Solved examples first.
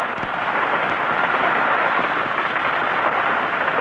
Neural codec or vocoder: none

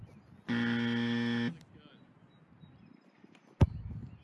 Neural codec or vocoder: none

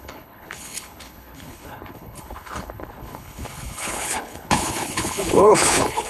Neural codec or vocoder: codec, HILCodec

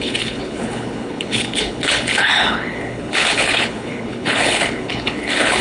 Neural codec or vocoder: codec, HILCodec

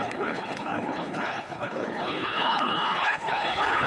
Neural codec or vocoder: codec, HILCodec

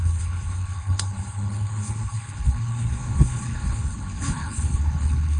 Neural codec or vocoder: codec, HILCodec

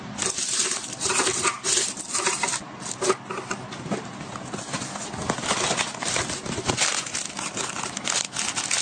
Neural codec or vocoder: none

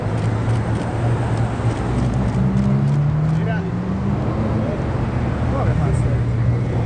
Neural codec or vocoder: none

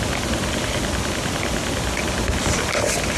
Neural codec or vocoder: none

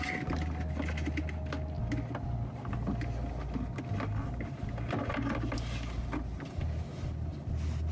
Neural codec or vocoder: none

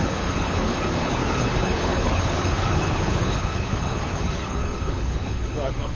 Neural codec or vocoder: codec, HILCodec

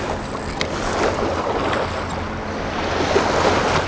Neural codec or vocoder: none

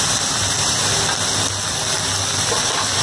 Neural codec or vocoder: none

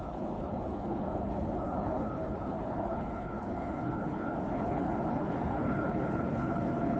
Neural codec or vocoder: codec, HILCodec